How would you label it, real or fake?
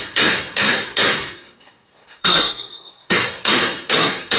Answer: fake